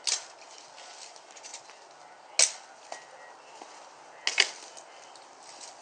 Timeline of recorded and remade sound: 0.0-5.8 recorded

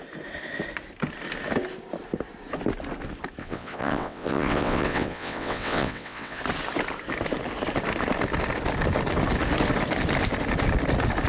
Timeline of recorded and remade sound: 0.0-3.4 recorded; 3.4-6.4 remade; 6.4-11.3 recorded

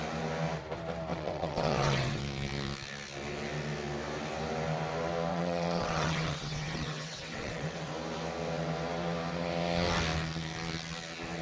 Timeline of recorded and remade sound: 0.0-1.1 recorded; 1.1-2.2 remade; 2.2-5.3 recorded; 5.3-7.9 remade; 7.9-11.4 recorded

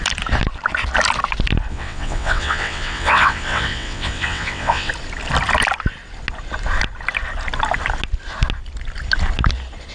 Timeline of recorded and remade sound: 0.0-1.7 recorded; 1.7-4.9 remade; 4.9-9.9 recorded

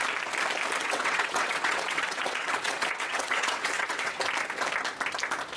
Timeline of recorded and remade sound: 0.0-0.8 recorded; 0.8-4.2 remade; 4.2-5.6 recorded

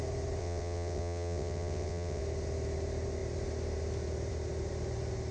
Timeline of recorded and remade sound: 0.0-0.4 recorded; 0.4-2.2 remade; 2.2-5.3 recorded

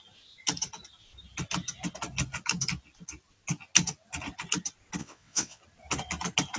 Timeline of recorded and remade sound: 0.0-5.0 recorded; 5.0-5.6 remade; 5.6-6.6 recorded